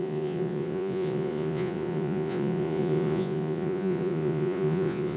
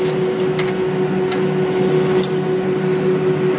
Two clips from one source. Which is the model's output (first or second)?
first